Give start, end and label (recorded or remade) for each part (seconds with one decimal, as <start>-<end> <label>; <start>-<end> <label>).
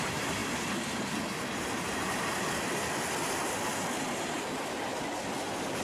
0.0-5.8 recorded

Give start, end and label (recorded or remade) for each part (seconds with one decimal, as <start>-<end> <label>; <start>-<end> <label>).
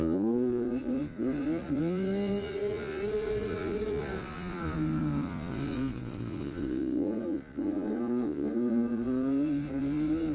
0.0-10.3 remade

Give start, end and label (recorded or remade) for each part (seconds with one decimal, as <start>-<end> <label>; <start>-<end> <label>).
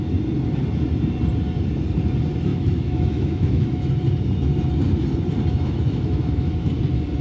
0.0-2.5 recorded; 2.5-3.9 remade; 3.9-5.5 recorded; 5.5-6.7 remade; 6.7-7.2 recorded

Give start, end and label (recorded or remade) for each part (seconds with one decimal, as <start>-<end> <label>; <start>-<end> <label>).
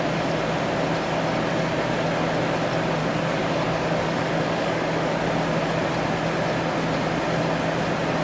0.0-3.0 recorded; 3.0-5.3 remade; 5.3-8.2 recorded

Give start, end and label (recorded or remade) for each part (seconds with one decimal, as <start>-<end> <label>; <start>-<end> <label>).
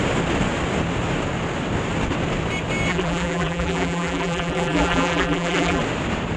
0.0-2.9 recorded; 2.9-5.8 remade; 5.8-6.4 recorded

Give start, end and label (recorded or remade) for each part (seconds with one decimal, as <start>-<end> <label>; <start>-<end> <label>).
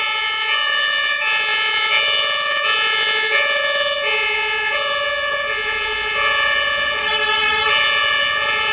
0.0-7.0 remade; 7.0-7.7 recorded; 7.7-8.7 remade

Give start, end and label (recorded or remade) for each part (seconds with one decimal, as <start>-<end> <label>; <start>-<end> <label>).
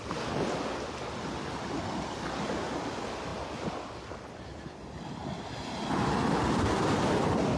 0.0-7.6 recorded